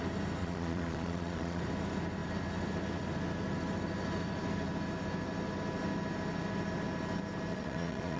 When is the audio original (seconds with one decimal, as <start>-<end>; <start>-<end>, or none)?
0.0-0.4; 1.6-7.5